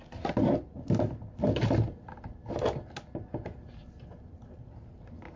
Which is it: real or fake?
real